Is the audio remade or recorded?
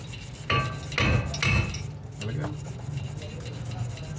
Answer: recorded